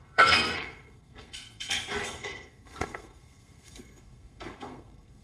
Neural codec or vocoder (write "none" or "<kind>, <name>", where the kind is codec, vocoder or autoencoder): codec, SNAC